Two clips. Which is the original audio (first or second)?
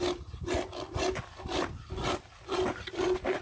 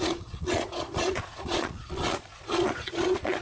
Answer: first